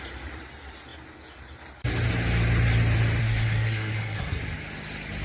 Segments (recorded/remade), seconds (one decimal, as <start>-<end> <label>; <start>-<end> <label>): 0.0-3.2 recorded; 3.2-4.4 remade; 4.4-5.2 recorded